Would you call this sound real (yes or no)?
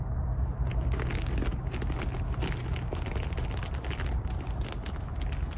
yes